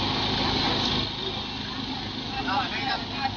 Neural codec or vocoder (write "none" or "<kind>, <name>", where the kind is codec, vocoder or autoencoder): none